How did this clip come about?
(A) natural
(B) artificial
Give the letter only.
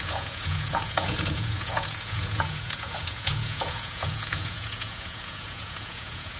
B